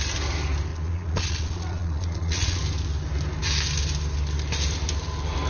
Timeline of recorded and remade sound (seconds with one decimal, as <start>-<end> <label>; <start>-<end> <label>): 0.0-0.7 recorded; 0.7-2.6 remade; 2.6-5.5 recorded